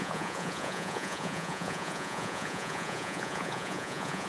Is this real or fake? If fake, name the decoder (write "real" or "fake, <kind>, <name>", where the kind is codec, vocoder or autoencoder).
fake, vocoder, Vocos